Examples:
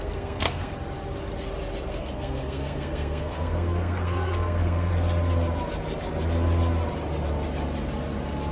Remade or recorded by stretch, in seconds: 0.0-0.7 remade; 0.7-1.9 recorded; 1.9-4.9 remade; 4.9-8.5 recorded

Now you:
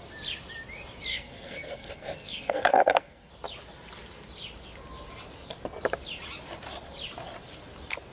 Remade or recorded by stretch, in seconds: 0.0-1.1 recorded; 1.1-3.3 remade; 3.3-8.1 recorded